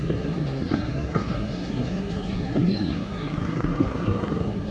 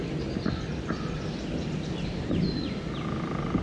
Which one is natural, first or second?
second